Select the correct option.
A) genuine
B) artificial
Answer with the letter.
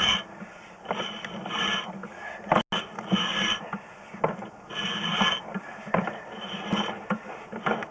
A